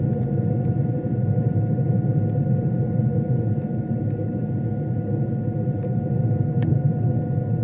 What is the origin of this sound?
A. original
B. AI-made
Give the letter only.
A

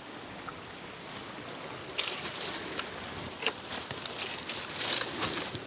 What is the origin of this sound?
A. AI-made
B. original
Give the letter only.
B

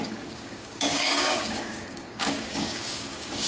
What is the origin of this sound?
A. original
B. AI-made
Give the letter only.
B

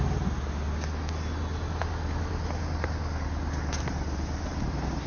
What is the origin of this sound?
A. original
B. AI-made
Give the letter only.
A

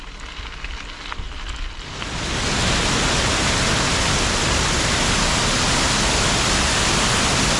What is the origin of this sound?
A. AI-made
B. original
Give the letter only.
B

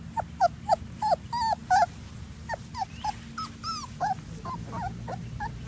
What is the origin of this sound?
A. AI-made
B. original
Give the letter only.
B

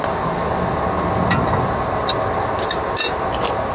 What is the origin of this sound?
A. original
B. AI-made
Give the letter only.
A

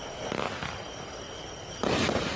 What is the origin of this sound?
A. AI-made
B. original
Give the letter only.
B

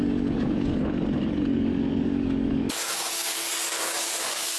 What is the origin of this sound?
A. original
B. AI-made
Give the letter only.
B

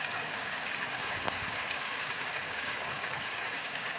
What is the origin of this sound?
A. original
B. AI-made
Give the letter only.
B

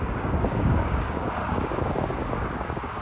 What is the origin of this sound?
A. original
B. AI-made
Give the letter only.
B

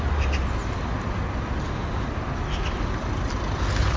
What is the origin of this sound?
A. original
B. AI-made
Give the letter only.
A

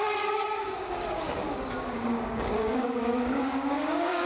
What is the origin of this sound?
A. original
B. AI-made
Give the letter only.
B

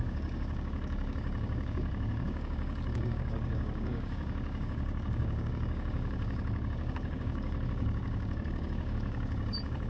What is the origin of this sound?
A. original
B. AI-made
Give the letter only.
B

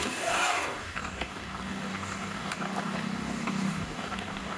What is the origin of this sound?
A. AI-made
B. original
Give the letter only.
A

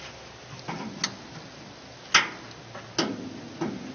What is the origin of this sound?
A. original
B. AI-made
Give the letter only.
A